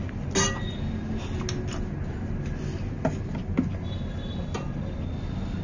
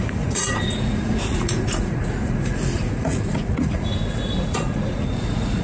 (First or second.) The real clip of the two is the first